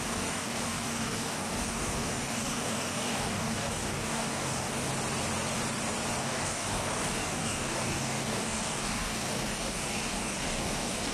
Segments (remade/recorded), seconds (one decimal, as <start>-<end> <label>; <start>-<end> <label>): 0.0-4.9 remade; 4.9-6.2 recorded; 6.2-11.1 remade